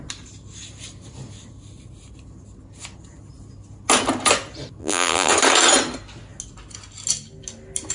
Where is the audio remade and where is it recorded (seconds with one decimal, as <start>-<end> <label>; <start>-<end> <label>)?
0.0-4.8 recorded; 4.8-5.3 remade; 5.3-7.9 recorded